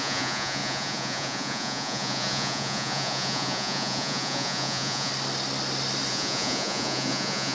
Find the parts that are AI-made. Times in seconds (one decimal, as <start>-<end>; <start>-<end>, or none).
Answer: 0.0-5.1; 6.1-7.5